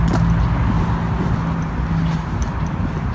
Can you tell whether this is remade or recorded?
recorded